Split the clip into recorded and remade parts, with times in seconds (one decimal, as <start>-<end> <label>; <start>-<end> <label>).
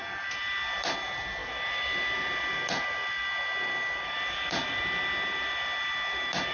0.0-6.5 recorded